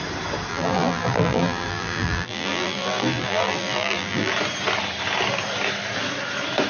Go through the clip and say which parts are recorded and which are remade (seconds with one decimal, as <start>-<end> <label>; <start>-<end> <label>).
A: 0.0-0.5 recorded; 0.5-4.3 remade; 4.3-6.7 recorded